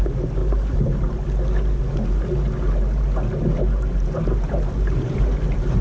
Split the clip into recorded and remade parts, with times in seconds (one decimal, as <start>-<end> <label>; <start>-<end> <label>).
0.0-0.4 remade; 0.4-3.9 recorded; 3.9-5.8 remade